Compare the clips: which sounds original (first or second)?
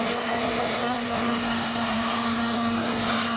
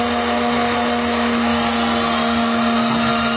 second